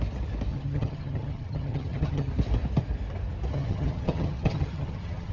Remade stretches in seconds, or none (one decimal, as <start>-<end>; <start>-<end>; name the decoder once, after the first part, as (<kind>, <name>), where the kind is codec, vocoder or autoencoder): 0.5-2.3 (vocoder, HiFi-GAN); 3.5-5.3